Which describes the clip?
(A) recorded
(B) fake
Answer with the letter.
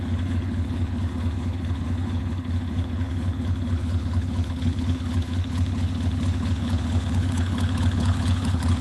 B